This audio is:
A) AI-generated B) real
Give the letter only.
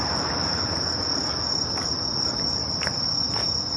B